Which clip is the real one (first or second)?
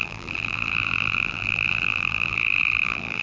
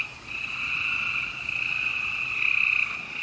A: second